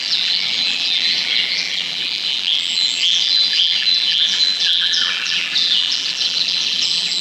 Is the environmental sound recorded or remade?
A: remade